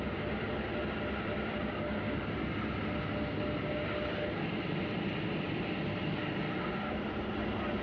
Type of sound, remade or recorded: recorded